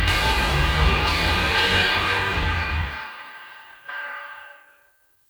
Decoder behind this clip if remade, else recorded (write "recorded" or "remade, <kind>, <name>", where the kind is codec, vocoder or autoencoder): remade, codec, DAC